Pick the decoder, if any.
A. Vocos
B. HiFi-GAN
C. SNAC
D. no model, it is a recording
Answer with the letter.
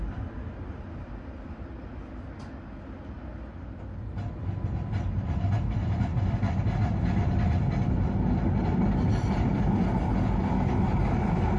D